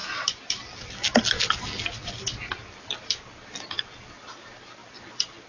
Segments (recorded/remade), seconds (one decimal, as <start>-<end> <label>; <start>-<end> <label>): 0.0-5.5 recorded